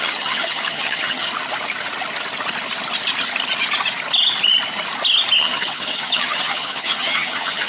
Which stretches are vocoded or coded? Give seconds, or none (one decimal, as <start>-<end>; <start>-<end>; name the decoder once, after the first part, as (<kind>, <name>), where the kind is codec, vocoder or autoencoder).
0.0-1.3 (vocoder, HiFi-GAN); 5.4-7.7